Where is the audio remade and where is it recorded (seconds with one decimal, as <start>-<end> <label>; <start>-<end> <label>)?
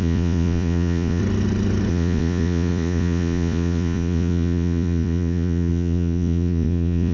0.0-1.2 remade; 1.2-1.9 recorded; 1.9-7.1 remade